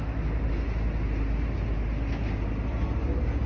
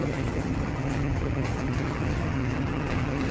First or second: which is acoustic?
first